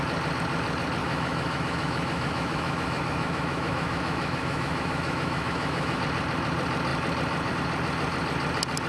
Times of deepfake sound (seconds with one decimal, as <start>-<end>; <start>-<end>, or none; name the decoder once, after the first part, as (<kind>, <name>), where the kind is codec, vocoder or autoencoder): 1.0-6.0 (autoencoder, DAC-VAE)